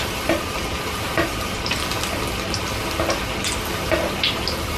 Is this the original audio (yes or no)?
yes